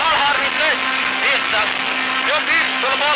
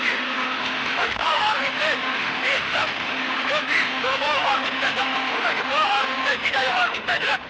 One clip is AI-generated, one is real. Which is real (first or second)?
first